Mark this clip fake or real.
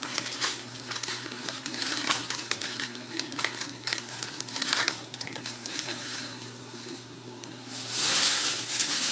fake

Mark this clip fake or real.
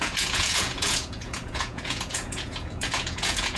fake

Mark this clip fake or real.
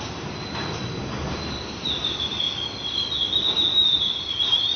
real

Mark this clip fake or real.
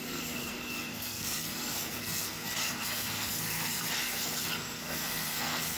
fake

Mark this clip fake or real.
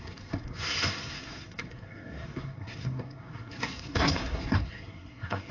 fake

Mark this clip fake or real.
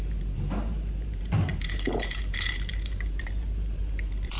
fake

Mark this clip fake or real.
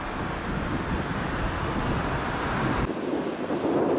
real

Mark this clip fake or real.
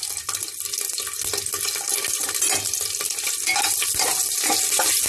real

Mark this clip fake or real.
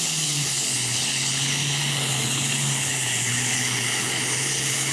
fake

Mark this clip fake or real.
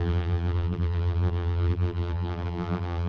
fake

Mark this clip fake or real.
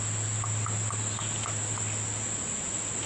real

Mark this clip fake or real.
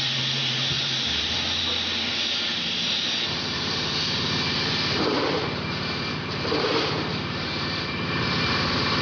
fake